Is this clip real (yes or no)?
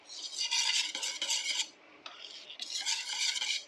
yes